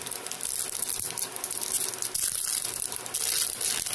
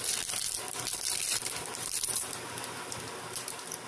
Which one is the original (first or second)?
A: first